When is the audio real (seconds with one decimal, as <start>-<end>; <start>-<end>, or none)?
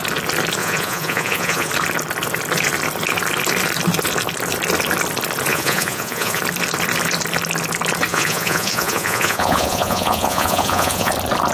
0.0-0.6; 1.7-5.5; 6.4-8.1; 11.1-11.5